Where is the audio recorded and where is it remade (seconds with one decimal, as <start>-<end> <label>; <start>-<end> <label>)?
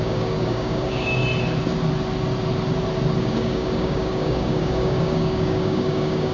0.0-1.2 remade; 1.2-3.2 recorded; 3.2-6.3 remade